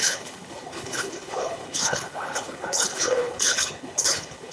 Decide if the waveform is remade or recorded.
remade